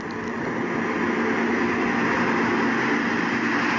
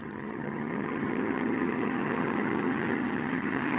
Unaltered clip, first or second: first